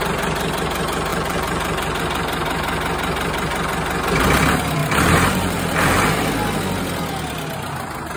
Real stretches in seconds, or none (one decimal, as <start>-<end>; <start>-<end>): 0.0-1.1; 2.0-4.8; 6.3-8.2